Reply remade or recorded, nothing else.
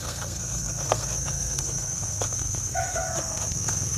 remade